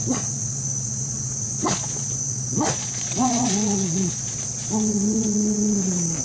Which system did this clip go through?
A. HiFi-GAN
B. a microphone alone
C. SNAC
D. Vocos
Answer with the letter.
D